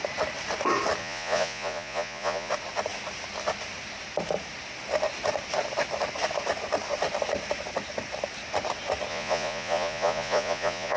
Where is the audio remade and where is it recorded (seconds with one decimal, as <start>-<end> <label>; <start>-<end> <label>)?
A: 0.0-1.0 recorded; 1.0-2.5 remade; 2.5-9.1 recorded; 9.1-11.0 remade